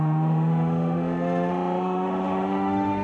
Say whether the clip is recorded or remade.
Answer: remade